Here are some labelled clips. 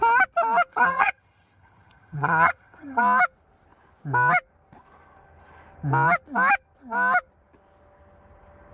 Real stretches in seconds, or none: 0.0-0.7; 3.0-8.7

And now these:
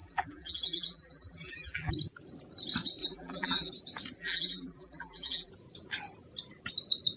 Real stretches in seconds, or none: 1.9-3.0; 3.7-4.2; 5.5-7.2

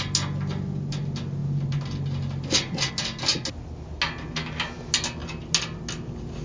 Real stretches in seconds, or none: 0.0-6.4

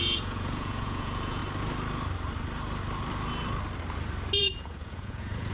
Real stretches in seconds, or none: 1.4-4.4

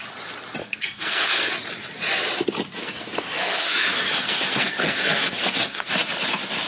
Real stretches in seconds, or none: 0.0-0.6; 1.5-2.8; 5.9-6.7

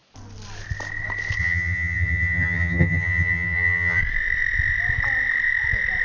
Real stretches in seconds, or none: 0.0-1.4; 4.0-6.0